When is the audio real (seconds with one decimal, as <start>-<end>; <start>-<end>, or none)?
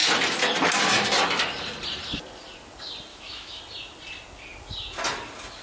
0.0-3.1; 3.6-5.6